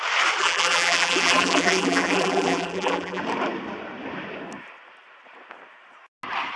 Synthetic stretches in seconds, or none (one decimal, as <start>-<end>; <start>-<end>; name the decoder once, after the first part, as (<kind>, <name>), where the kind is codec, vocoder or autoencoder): 0.4-3.2 (vocoder, BigVGAN v2)